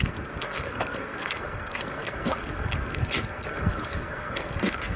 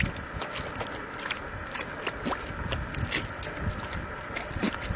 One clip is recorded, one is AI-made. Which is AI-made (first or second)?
first